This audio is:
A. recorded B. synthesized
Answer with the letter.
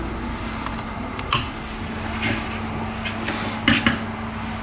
A